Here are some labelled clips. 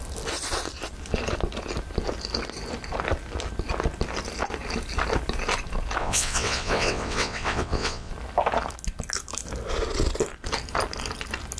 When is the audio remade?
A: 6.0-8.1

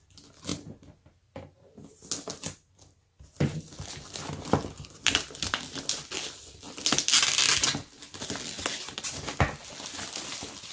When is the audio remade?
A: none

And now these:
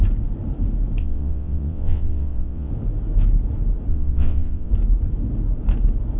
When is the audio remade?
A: 1.0-2.7; 3.9-4.7

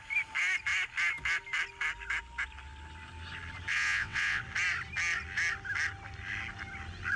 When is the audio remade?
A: 3.7-4.4